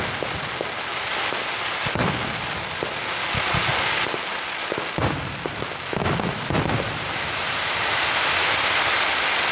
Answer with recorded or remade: recorded